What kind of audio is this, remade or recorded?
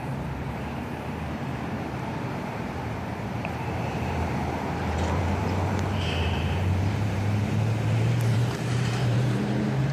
remade